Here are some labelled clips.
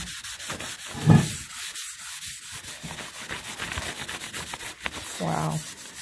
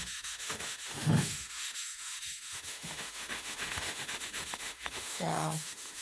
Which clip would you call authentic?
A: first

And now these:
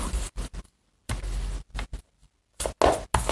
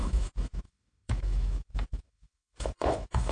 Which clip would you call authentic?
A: first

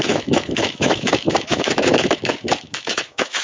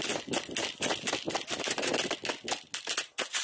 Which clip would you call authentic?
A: second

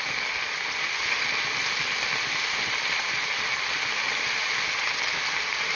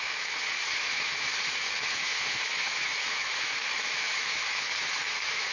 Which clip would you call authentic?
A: first